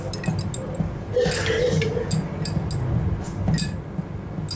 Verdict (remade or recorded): recorded